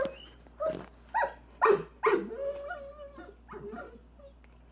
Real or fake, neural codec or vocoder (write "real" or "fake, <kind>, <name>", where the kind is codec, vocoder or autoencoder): real